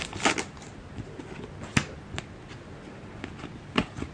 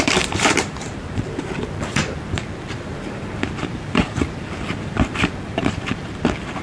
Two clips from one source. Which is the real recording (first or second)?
first